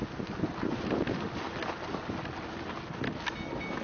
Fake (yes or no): no